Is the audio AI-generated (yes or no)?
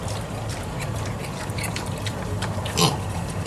yes